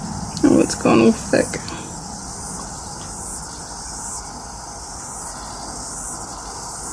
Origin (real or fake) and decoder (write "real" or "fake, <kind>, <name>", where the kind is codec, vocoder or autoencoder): real